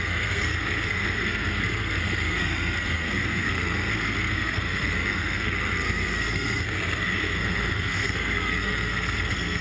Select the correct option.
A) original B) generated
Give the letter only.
B